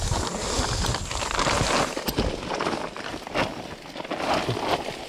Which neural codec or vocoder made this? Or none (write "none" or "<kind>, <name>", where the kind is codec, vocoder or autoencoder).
none